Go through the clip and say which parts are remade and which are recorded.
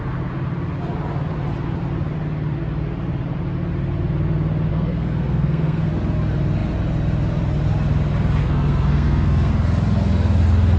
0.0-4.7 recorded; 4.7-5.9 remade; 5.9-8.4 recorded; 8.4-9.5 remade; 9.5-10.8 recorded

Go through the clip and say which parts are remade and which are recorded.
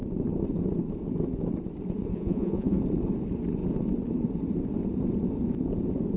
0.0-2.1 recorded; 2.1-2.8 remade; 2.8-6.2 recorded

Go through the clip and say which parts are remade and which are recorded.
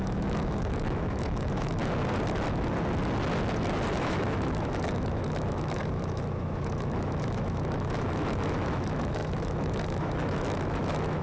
0.0-1.8 remade; 1.8-3.9 recorded; 3.9-11.2 remade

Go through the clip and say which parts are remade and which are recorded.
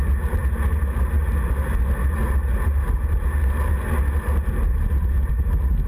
0.0-5.9 recorded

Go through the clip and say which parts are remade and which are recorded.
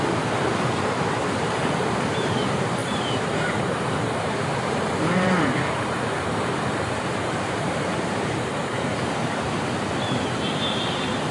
0.0-11.3 remade